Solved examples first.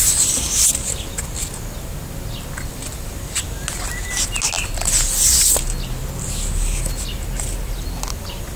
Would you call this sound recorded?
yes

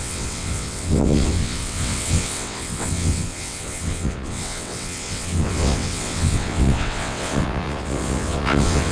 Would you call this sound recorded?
no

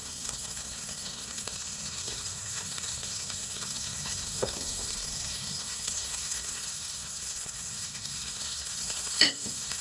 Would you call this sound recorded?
no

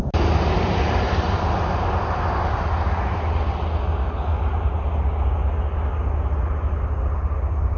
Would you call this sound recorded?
yes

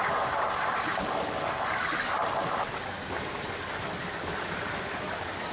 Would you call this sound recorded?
yes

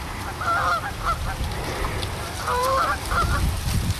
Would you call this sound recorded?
no